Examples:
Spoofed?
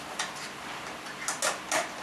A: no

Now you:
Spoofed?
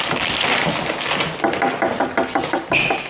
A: no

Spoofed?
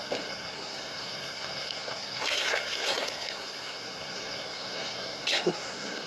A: yes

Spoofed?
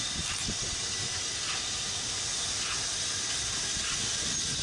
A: no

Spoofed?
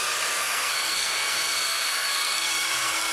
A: yes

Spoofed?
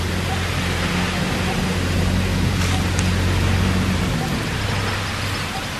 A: no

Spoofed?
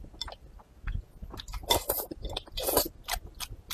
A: no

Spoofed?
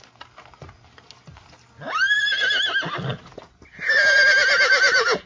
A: no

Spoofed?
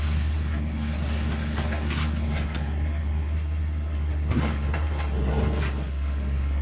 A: yes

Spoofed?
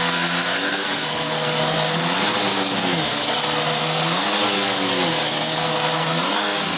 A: yes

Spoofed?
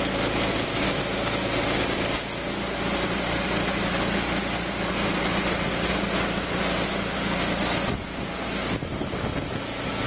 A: no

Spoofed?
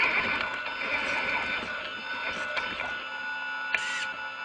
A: no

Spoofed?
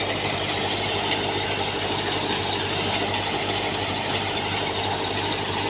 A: no